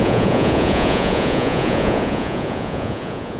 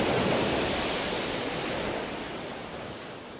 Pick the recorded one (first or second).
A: second